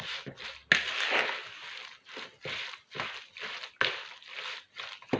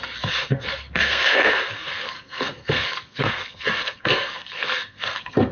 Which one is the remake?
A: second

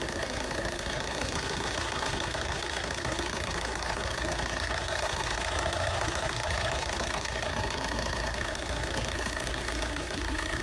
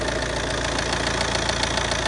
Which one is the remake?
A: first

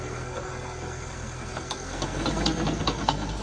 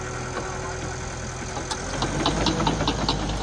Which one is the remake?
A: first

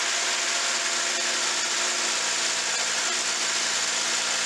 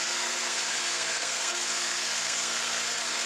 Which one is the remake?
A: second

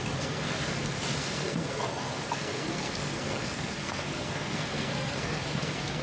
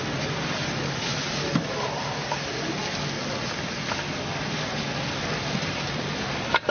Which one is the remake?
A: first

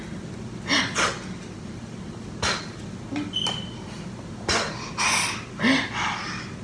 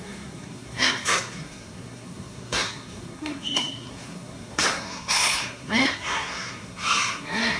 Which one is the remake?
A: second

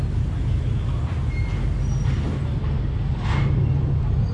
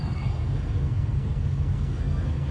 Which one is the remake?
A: second